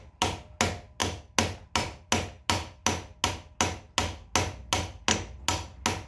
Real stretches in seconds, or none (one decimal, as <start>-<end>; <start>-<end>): 0.0-6.1